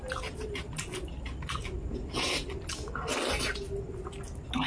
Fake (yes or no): no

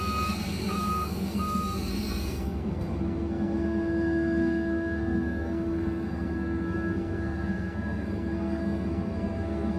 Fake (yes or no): yes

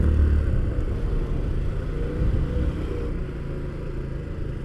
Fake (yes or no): no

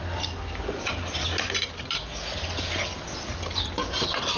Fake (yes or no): no